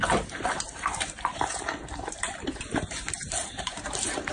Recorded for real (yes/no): no